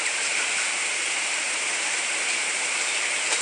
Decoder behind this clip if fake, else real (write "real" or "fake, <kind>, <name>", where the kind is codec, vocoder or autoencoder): fake, vocoder, BigVGAN v2